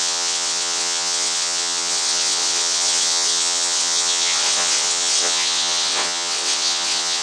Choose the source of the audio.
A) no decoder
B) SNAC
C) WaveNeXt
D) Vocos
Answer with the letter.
C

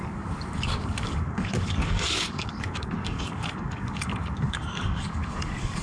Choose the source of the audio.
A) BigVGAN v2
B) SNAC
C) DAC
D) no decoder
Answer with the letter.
C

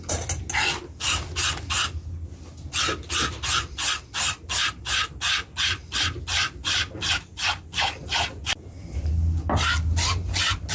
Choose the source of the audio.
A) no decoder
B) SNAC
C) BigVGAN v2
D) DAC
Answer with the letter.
A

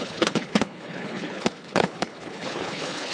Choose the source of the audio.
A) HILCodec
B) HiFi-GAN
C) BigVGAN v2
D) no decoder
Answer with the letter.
A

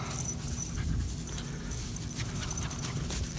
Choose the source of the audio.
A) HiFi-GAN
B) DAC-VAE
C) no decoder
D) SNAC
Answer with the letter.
C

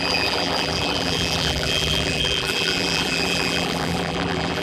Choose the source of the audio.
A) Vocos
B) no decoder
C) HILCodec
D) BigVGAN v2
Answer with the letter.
D